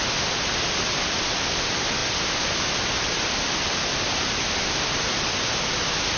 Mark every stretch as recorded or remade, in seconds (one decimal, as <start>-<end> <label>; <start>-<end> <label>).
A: 0.0-6.2 recorded